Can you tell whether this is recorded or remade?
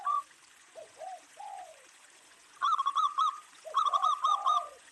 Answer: remade